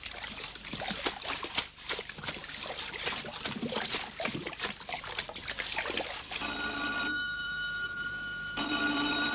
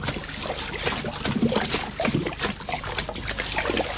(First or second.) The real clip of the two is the second